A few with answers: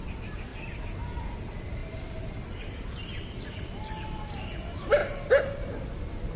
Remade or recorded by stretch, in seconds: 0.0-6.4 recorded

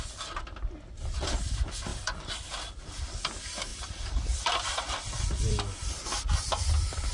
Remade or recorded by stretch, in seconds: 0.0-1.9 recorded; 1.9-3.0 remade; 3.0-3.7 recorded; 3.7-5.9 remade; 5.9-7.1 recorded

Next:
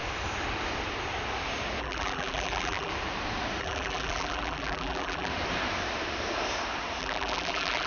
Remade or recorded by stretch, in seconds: 0.0-1.8 recorded; 1.8-2.9 remade; 2.9-3.6 recorded; 3.6-5.3 remade; 5.3-7.0 recorded; 7.0-7.9 remade

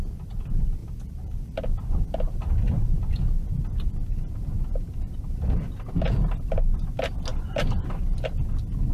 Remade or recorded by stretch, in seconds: 0.0-0.8 recorded; 0.8-3.0 remade; 3.0-8.9 recorded

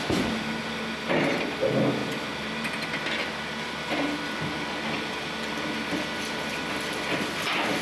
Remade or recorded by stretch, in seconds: 0.0-7.8 recorded

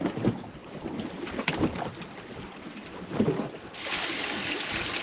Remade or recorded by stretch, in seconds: 0.0-0.6 recorded; 0.6-2.6 remade; 2.6-5.0 recorded